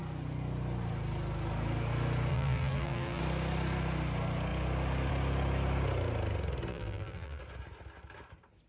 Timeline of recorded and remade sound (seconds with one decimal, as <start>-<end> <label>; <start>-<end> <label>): 0.0-2.3 recorded; 2.3-3.2 remade; 3.2-6.7 recorded; 6.7-7.4 remade; 7.4-8.7 recorded